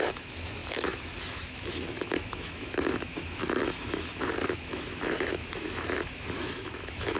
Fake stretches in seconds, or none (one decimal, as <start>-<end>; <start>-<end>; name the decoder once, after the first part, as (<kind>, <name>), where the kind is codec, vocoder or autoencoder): 0.0-7.2 (autoencoder, DAC-VAE)

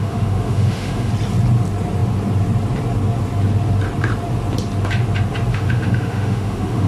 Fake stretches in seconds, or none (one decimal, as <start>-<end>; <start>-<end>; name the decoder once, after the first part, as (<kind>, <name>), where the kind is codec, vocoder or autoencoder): 0.0-1.1 (autoencoder, DAC-VAE); 5.5-6.9